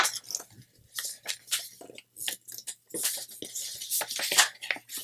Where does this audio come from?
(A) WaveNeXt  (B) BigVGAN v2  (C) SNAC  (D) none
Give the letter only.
D